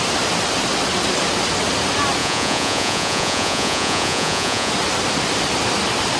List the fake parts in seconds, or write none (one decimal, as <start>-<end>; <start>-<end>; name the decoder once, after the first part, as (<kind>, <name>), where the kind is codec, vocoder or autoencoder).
2.2-4.7 (vocoder, Vocos)